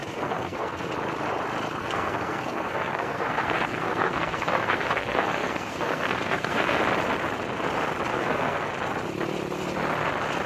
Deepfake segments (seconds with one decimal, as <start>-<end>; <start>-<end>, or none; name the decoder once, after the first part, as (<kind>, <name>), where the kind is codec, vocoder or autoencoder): 0.0-0.9 (codec, SNAC); 1.8-6.8; 8.1-8.7